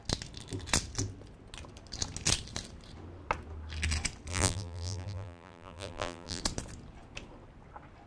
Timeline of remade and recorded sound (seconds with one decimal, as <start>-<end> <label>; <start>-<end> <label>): 0.0-4.3 recorded; 4.3-6.4 remade; 6.4-8.1 recorded